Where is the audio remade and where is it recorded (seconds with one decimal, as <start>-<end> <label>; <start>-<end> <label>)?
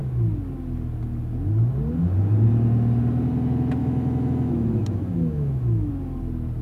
0.0-3.8 recorded; 3.8-5.9 remade; 5.9-6.6 recorded